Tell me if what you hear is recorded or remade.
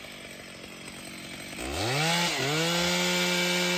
recorded